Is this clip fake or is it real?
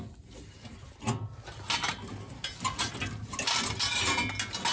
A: real